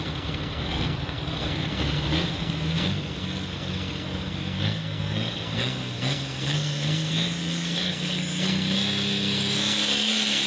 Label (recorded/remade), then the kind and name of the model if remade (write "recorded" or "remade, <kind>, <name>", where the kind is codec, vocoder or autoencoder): remade, codec, SNAC